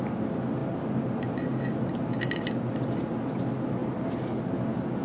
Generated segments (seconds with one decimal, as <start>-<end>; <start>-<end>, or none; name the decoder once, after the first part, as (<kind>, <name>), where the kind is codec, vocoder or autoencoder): none